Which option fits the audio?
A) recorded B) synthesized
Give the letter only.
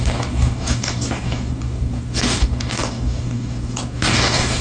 B